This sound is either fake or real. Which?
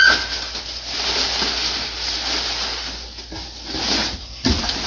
real